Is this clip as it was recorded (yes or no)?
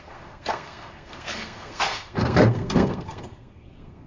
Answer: no